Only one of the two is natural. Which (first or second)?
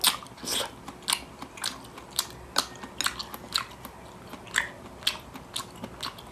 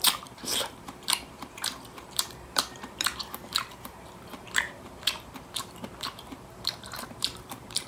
first